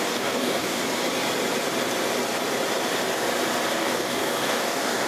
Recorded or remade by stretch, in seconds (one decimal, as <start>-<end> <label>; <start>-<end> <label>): 0.0-0.8 remade; 0.8-3.7 recorded; 3.7-5.1 remade